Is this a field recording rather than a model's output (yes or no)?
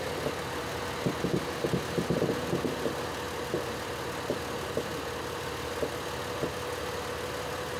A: yes